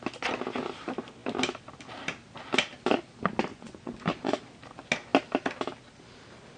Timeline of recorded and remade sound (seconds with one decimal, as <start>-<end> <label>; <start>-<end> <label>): 0.0-3.5 recorded; 3.5-4.4 remade; 4.4-6.6 recorded